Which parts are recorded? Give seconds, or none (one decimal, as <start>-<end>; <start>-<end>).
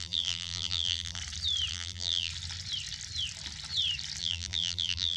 1.2-1.7; 2.3-4.2